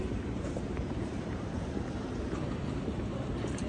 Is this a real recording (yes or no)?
no